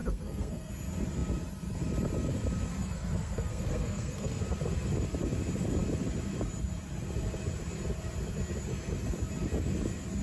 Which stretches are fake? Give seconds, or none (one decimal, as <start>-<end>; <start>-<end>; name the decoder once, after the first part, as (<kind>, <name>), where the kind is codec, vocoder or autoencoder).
0.0-0.7 (codec, SNAC); 2.7-4.4